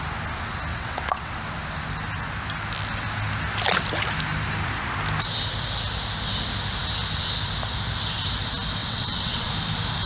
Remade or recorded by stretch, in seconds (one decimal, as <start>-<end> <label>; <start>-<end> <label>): 0.0-0.7 recorded; 0.7-1.3 remade; 1.3-8.8 recorded; 8.8-9.5 remade; 9.5-10.1 recorded